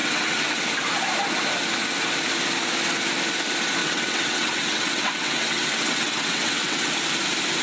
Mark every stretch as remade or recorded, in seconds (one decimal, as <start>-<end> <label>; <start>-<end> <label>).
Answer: 0.0-0.7 remade; 0.7-3.8 recorded; 3.8-6.9 remade; 6.9-7.6 recorded